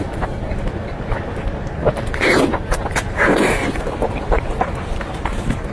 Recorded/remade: recorded